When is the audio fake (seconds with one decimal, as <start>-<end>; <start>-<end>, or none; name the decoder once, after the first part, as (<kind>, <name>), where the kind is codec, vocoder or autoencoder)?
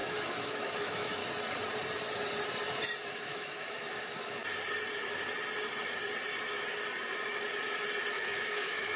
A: 0.0-1.2 (autoencoder, DAC-VAE); 3.1-4.4; 8.1-9.0